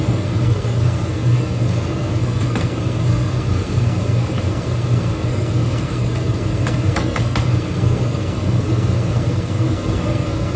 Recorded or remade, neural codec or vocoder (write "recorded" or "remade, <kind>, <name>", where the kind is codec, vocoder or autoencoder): remade, codec, SNAC